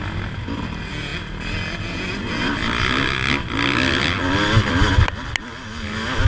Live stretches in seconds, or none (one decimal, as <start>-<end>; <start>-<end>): 0.0-6.3